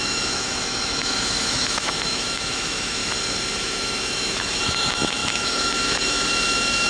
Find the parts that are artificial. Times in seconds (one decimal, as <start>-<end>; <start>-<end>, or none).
0.0-3.0; 3.6-6.9